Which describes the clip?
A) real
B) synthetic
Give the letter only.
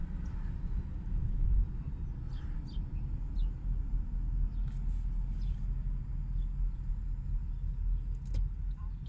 A